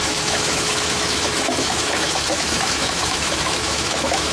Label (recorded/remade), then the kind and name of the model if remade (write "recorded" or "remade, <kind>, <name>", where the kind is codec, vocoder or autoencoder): remade, autoencoder, DAC-VAE